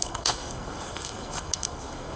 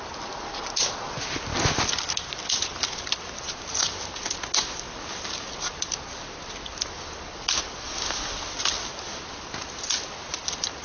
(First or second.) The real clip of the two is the second